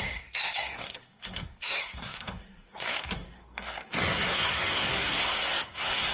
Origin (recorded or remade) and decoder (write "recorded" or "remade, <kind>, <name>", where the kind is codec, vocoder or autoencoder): remade, codec, SNAC